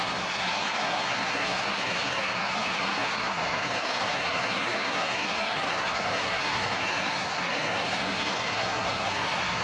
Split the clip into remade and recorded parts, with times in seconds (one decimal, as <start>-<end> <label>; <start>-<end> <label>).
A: 0.0-9.6 remade